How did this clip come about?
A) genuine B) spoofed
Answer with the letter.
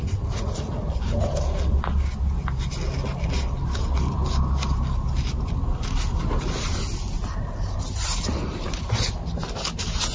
A